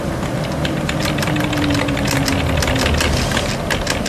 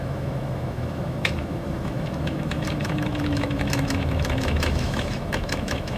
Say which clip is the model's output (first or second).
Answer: second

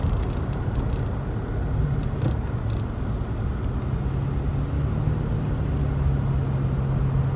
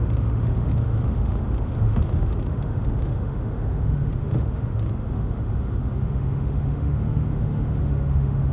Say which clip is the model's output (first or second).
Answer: second